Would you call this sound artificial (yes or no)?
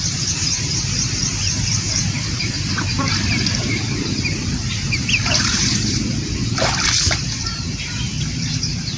yes